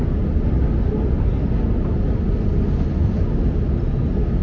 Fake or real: real